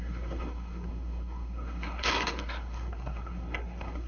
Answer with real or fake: fake